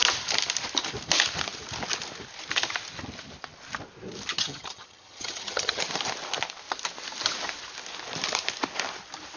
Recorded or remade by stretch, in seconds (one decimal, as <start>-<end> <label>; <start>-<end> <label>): 0.0-4.3 recorded; 4.3-5.8 remade; 5.8-9.4 recorded